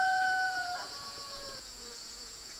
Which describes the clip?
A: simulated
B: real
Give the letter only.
A